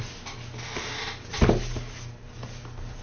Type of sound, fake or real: real